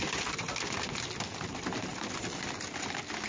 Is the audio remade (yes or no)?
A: no